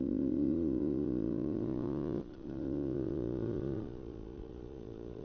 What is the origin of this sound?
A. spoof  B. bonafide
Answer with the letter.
A